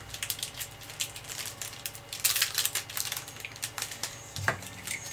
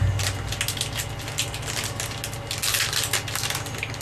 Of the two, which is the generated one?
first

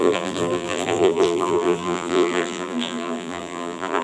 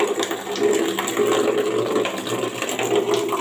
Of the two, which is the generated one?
first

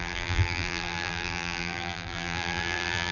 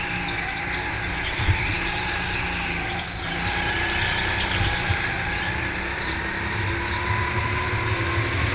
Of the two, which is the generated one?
first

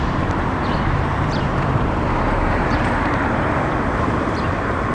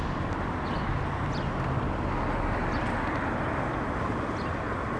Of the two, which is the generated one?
first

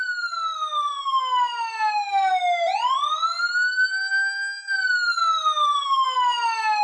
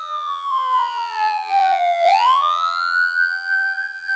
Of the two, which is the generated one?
second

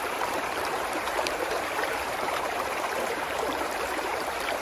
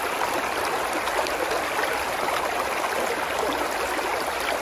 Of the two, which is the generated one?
first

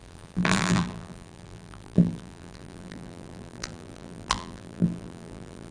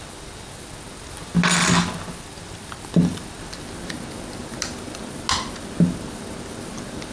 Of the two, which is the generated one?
first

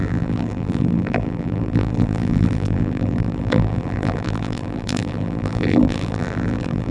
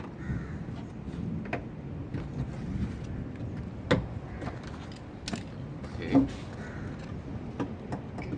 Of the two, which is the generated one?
first